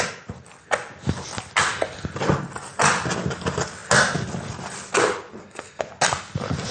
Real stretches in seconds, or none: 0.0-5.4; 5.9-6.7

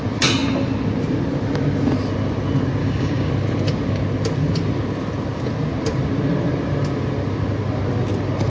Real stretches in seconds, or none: 0.0-2.8; 3.3-8.5

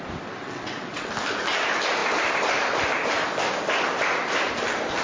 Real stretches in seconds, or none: 0.0-0.4; 1.1-5.0

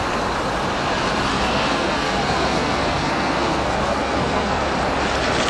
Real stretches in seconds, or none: 0.0-1.3; 4.6-5.5

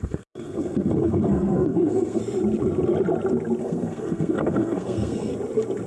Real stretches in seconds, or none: 2.2-3.6; 5.3-5.9

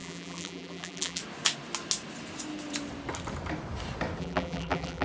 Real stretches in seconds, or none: 1.2-4.2